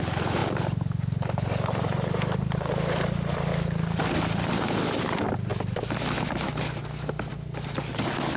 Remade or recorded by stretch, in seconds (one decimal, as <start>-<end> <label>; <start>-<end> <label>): 0.0-8.4 recorded